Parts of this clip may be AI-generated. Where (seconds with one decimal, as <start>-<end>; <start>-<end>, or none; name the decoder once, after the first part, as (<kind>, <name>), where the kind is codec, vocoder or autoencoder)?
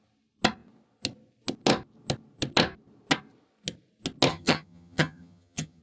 4.3-5.8 (vocoder, HiFi-GAN)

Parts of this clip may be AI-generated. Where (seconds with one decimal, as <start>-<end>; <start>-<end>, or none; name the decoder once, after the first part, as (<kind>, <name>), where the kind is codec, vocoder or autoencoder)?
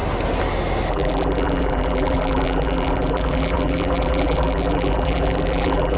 0.9-6.0 (vocoder, BigVGAN v2)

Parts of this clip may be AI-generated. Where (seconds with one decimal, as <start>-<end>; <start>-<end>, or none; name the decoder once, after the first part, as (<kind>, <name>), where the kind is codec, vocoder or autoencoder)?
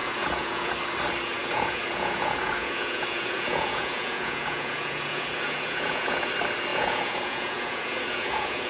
0.0-0.7 (vocoder, Vocos); 1.4-6.3; 6.7-8.7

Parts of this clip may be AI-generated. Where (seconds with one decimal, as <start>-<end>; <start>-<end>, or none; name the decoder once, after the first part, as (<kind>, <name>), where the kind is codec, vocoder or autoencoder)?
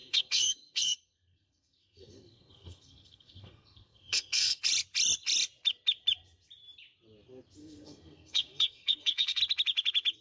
0.0-4.6 (codec, SNAC); 7.6-9.4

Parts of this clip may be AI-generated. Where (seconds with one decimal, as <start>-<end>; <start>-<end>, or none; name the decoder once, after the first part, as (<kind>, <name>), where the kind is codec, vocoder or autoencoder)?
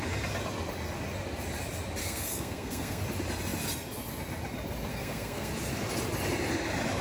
2.0-3.0 (codec, SNAC); 4.9-5.5